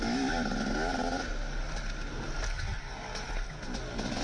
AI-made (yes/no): no